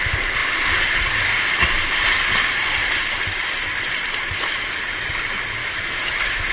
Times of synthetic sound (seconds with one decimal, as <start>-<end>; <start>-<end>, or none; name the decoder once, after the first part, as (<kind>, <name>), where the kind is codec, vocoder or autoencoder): 5.6-6.5 (autoencoder, DAC-VAE)